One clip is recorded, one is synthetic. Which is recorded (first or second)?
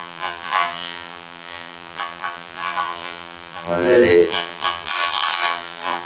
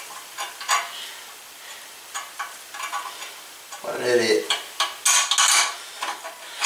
second